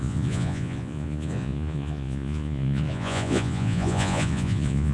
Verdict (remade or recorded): remade